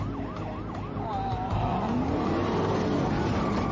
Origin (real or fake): real